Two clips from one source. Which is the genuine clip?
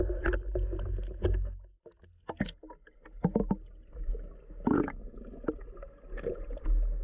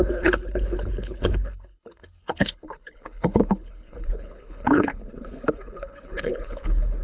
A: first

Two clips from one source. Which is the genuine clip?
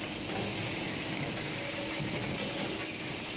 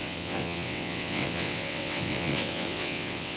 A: first